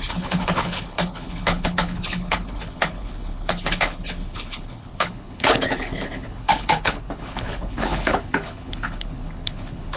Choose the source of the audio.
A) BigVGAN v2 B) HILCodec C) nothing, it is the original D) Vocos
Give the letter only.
B